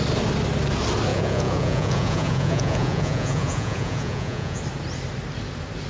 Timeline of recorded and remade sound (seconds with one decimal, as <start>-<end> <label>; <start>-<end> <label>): 0.0-1.1 recorded; 1.1-4.6 remade; 4.6-5.9 recorded